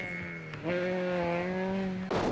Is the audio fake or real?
real